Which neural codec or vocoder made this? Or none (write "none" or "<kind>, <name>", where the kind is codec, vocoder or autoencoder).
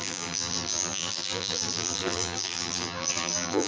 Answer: vocoder, BigVGAN v2